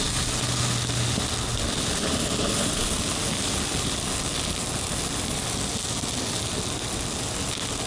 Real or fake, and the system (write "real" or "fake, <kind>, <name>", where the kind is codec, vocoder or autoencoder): real